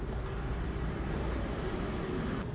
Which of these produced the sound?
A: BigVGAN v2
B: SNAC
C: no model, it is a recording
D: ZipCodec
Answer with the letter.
C